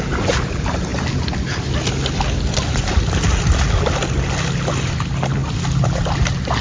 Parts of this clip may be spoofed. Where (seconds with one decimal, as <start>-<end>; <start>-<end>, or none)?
none